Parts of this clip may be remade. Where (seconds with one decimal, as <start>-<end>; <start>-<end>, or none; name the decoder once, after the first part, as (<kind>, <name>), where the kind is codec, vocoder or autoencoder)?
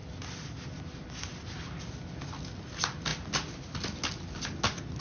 none